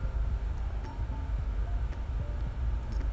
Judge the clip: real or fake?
real